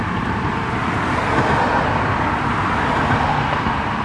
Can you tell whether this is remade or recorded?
recorded